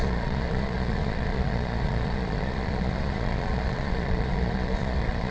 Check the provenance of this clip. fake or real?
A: fake